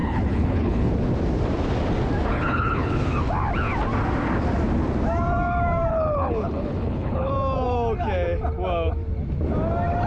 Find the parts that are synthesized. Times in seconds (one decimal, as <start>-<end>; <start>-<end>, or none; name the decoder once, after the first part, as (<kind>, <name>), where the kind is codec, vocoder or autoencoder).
0.0-0.9 (codec, HILCodec); 2.3-3.3; 5.9-7.3